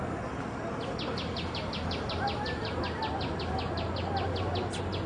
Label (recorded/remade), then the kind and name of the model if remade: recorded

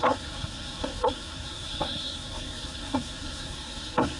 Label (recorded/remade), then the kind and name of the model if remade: remade, codec, SNAC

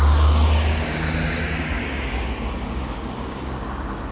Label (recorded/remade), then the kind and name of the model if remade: remade, codec, DAC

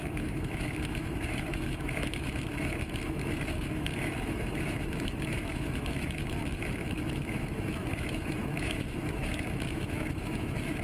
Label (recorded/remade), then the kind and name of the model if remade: remade, autoencoder, DAC-VAE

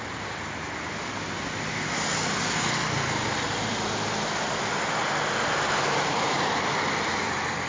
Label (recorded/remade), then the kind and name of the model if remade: recorded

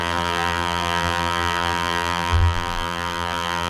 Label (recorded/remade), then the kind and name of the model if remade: remade, vocoder, BigVGAN v2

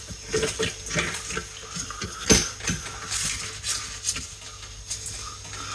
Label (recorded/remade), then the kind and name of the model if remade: recorded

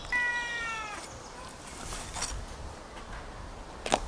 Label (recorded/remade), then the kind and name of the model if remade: recorded